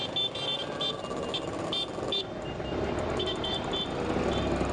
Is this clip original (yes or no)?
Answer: yes